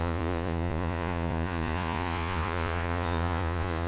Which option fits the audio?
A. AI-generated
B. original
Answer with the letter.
A